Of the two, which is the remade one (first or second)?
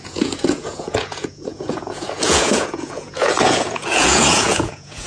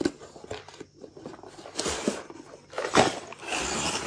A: first